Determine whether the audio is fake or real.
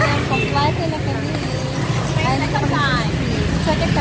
real